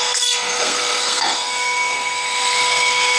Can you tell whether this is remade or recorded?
remade